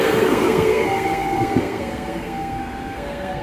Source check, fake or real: fake